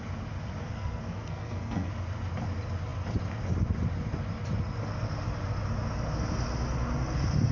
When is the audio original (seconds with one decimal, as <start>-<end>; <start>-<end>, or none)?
0.0-0.6; 1.9-7.5